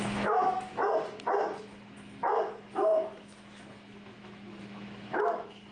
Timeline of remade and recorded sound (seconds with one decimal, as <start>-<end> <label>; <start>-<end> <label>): 0.0-0.7 remade; 0.7-1.6 recorded; 1.6-5.7 remade